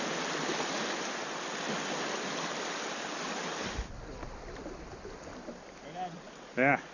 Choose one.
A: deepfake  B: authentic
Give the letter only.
B